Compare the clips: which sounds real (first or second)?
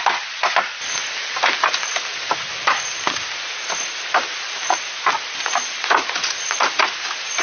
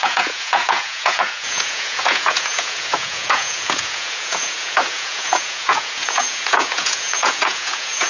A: first